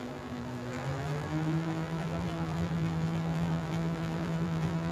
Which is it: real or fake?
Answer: fake